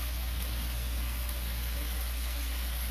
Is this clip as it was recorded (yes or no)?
no